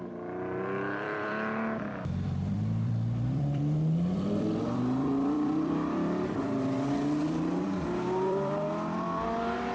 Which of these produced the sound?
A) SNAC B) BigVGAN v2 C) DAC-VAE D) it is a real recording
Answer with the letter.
B